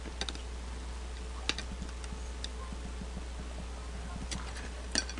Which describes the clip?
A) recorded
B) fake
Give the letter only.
A